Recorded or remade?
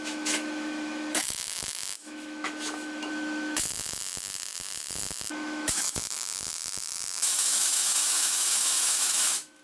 remade